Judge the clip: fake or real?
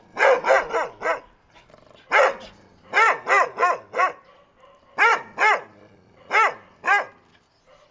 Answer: real